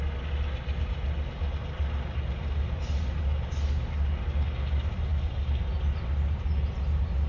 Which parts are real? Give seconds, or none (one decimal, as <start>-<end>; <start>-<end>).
0.0-7.3